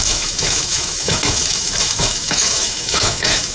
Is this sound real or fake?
fake